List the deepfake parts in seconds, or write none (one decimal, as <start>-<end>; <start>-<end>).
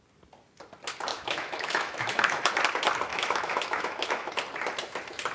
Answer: 1.1-2.5; 3.1-4.3